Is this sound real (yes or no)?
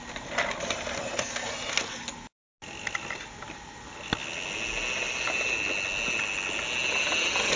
yes